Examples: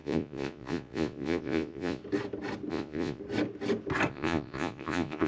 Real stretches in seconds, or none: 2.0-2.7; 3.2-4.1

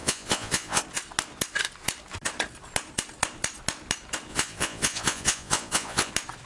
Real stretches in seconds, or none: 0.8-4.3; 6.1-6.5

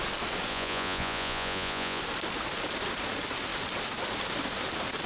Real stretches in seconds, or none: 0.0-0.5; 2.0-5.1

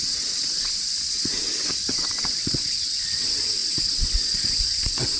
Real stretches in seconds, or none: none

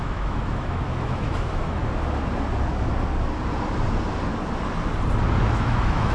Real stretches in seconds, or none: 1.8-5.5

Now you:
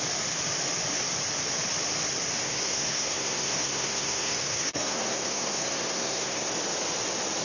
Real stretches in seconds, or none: 0.0-2.4; 6.5-7.4

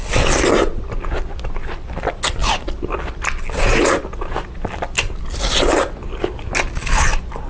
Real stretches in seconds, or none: 0.0-7.5